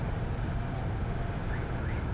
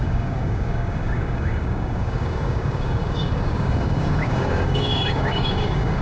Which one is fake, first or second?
second